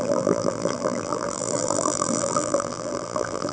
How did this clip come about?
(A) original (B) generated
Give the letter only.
B